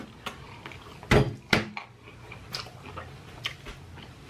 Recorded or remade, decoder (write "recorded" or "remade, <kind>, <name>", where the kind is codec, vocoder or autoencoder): recorded